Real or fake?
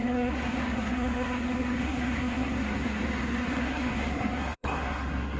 fake